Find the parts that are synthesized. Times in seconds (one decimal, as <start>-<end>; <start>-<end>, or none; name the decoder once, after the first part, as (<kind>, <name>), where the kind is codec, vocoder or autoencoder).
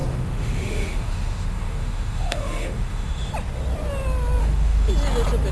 0.0-3.3 (autoencoder, DAC-VAE); 4.4-4.9